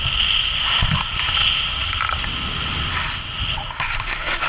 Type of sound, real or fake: real